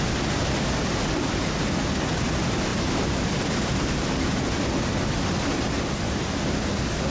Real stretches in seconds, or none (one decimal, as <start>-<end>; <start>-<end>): 0.0-2.7; 4.5-7.1